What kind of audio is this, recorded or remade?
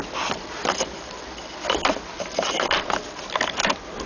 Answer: recorded